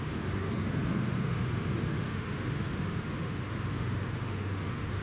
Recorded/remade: remade